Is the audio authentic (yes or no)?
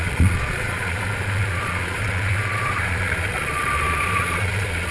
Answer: no